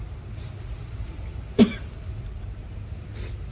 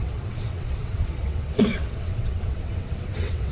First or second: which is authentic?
first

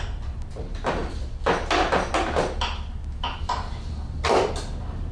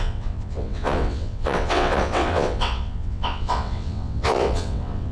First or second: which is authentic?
first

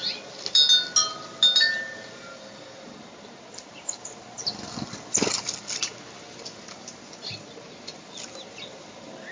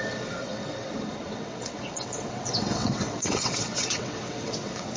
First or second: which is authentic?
first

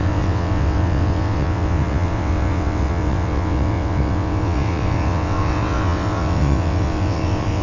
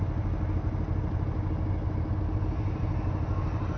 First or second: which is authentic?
second